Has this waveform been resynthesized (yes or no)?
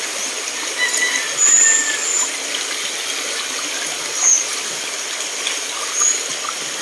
no